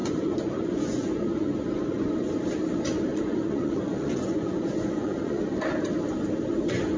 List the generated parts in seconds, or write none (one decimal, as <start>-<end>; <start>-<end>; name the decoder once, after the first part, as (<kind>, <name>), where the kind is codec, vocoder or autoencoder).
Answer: 0.0-2.3 (vocoder, Vocos); 3.1-5.4